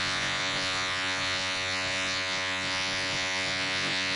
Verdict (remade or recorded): remade